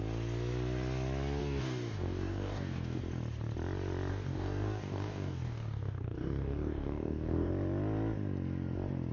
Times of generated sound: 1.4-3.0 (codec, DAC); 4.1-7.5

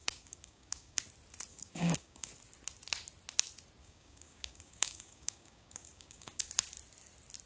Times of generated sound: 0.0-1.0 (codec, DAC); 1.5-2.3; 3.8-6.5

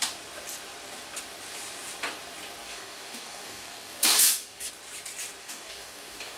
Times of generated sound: 2.6-4.7 (codec, DAC); 5.4-6.4

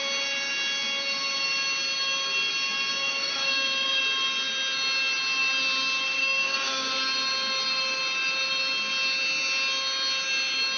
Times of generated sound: 2.9-4.0 (codec, DAC); 6.2-6.9

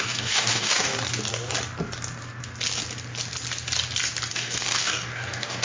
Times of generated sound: 0.0-0.9 (codec, DAC); 4.3-5.6

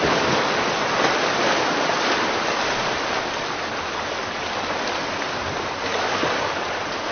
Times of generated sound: none

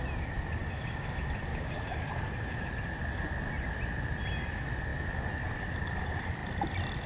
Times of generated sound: 0.6-1.1 (codec, DAC); 1.5-2.7